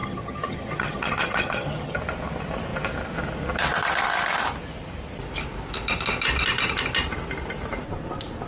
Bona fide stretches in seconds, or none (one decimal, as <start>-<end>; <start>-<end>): 2.0-8.5